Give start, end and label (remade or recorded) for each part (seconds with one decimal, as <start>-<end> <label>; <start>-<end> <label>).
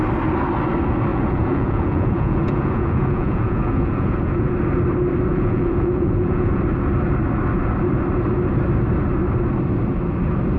0.0-1.1 recorded; 1.1-4.5 remade; 4.5-5.3 recorded; 5.3-6.6 remade; 6.6-10.6 recorded